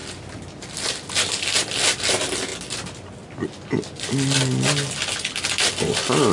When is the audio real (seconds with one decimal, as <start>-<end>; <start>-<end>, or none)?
0.0-6.3